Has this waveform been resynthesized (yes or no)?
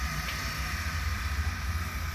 yes